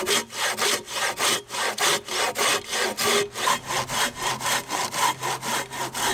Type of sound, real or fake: real